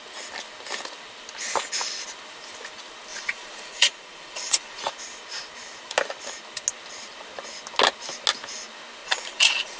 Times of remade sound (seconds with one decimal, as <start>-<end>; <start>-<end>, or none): 3.1-4.9; 9.0-9.8